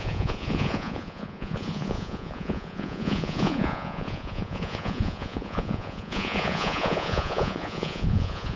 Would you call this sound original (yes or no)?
no